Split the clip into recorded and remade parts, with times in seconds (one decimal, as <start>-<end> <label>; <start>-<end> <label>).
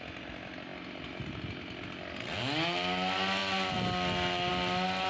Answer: 0.0-5.1 recorded